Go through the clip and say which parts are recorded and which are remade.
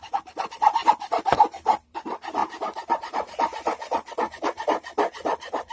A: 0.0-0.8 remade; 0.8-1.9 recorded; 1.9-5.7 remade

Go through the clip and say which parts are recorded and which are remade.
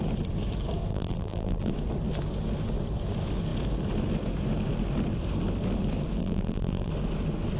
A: 0.0-0.9 recorded; 0.9-1.7 remade; 1.7-6.2 recorded; 6.2-6.9 remade; 6.9-7.6 recorded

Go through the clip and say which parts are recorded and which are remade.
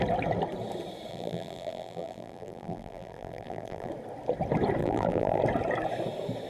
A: 0.0-1.1 recorded; 1.1-3.9 remade; 3.9-4.8 recorded; 4.8-5.4 remade; 5.4-6.5 recorded